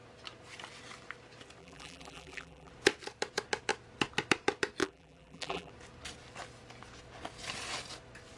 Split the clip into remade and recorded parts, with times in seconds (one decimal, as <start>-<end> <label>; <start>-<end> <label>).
0.0-1.6 recorded; 1.6-2.7 remade; 2.7-4.8 recorded; 4.8-5.7 remade; 5.7-8.4 recorded